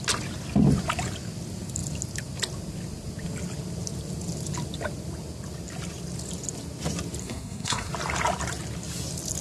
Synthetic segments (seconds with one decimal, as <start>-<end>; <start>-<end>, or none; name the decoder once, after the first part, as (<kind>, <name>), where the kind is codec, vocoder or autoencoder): 7.2-7.9 (codec, SNAC)